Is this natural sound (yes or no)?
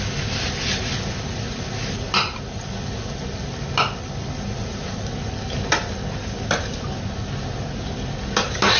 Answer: yes